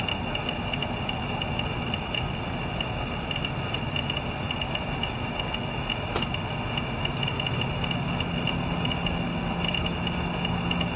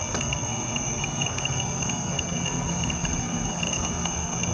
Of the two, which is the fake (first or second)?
second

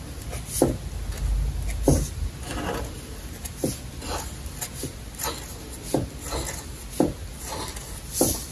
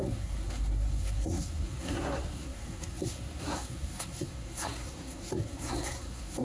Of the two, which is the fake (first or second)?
second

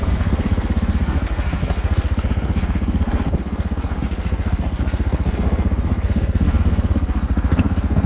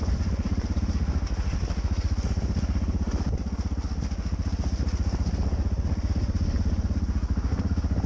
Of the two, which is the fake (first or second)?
first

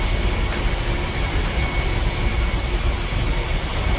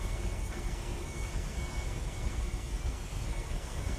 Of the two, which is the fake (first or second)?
second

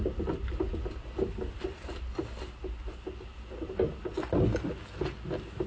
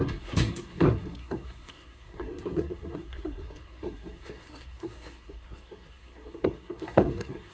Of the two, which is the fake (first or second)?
second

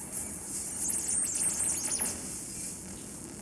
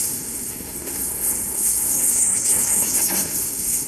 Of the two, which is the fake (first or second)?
second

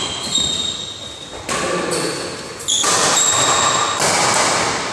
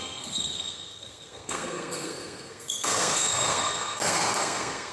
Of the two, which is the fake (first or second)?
second